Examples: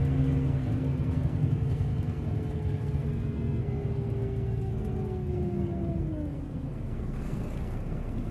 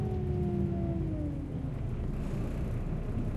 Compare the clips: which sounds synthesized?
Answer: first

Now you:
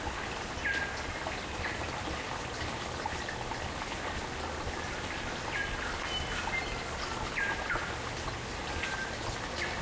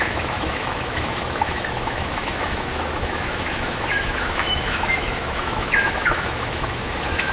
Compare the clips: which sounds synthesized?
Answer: second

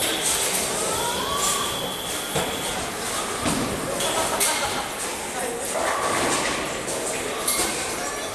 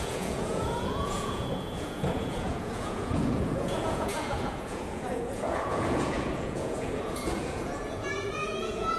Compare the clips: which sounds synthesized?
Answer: second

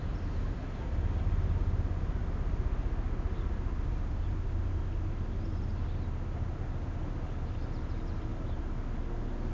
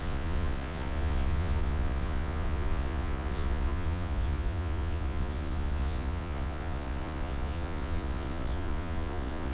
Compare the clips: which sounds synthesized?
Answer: second